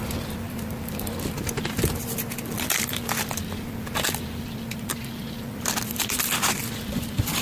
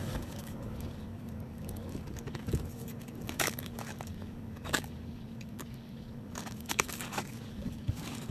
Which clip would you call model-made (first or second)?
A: second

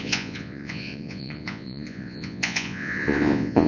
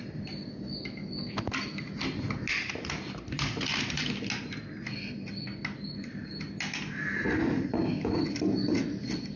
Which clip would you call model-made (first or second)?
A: first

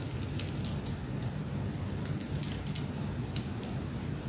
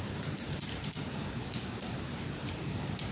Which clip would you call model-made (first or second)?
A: second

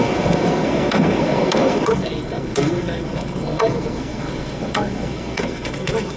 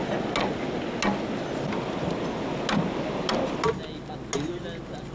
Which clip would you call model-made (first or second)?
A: first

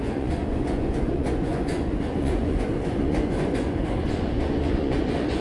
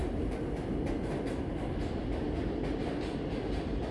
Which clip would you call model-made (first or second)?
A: first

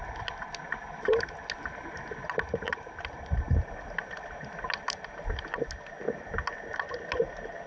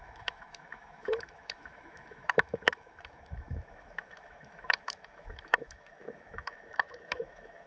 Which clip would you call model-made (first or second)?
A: second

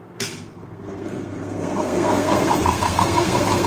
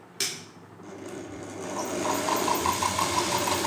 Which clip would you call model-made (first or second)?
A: first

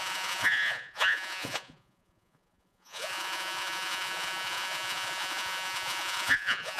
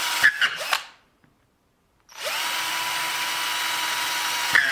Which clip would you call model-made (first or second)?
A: first